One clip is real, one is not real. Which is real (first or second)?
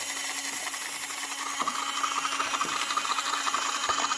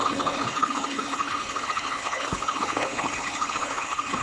first